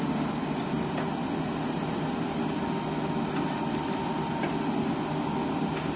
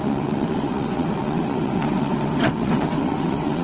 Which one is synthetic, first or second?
second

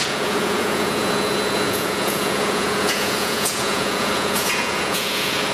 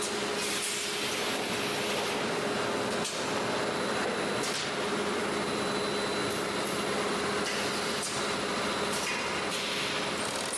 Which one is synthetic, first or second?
first